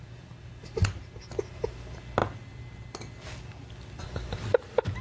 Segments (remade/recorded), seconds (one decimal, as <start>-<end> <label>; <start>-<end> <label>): 0.0-5.0 recorded